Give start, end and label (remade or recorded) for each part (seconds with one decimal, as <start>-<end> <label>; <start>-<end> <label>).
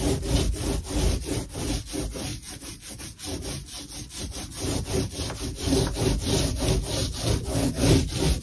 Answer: 0.0-8.4 recorded